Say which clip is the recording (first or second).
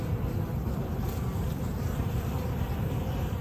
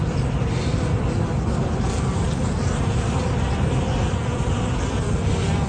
second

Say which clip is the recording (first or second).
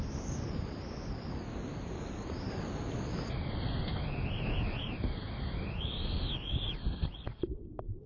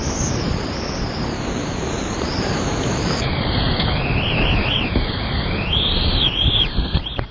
first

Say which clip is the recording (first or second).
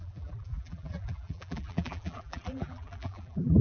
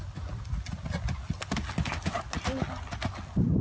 second